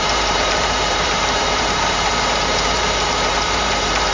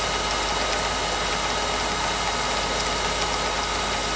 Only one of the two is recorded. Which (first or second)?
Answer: second